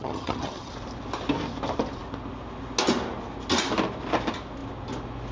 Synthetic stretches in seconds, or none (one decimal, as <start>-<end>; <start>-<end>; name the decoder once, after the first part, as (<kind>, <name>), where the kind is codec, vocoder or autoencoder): 0.0-0.7 (vocoder, HiFi-GAN)